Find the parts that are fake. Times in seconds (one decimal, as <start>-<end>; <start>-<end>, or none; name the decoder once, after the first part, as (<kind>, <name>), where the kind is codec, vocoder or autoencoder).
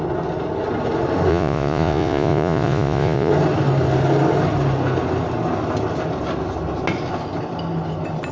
1.3-3.3 (vocoder, Vocos)